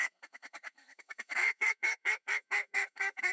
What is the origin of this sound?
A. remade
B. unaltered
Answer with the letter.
A